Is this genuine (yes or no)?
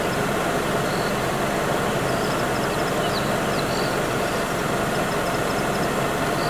yes